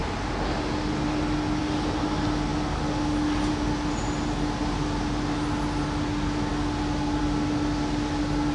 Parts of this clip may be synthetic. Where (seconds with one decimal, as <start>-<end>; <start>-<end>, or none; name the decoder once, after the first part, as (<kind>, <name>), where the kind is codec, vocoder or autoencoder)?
none